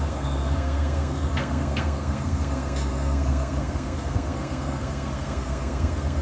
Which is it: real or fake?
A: fake